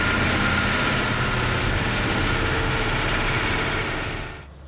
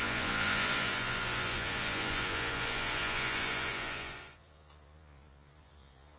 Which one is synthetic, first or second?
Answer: second